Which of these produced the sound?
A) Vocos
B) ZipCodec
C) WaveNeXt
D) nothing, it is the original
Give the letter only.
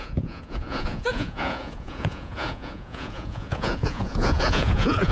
A